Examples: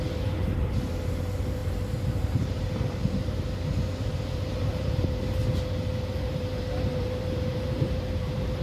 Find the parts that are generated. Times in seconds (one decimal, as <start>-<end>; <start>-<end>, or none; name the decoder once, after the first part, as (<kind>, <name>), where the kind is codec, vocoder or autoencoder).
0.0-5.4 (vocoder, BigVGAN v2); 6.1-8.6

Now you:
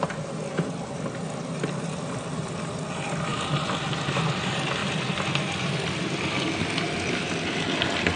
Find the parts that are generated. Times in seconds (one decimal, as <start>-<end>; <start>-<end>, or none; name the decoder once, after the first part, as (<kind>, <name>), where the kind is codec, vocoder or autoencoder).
3.3-4.3 (vocoder, BigVGAN v2)

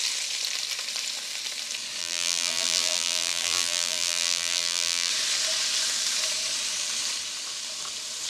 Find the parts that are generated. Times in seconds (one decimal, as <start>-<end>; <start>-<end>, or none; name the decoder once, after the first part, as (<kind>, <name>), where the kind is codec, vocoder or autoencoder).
2.0-5.1 (vocoder, BigVGAN v2)